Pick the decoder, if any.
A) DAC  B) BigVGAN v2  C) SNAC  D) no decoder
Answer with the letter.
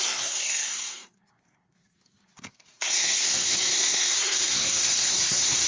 C